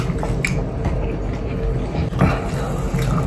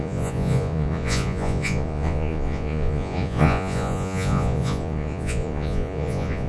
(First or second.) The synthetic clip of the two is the second